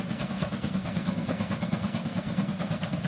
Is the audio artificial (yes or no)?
yes